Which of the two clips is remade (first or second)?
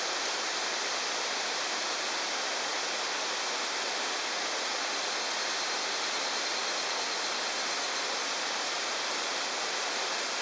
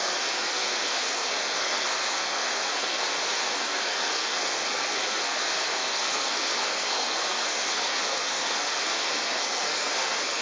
second